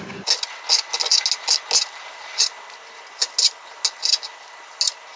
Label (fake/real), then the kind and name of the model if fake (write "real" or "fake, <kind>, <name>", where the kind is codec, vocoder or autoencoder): real